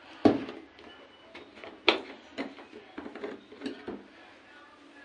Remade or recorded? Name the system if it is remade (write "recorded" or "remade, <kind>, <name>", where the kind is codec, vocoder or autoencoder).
recorded